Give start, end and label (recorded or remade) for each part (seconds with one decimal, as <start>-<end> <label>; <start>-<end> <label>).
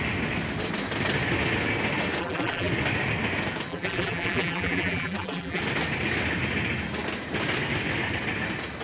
0.0-2.2 recorded; 2.2-2.7 remade; 2.7-3.7 recorded; 3.7-5.6 remade; 5.6-8.8 recorded